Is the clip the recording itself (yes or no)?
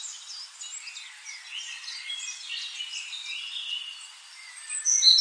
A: yes